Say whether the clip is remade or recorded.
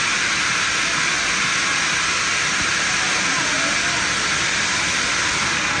recorded